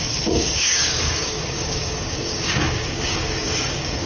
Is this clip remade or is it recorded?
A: remade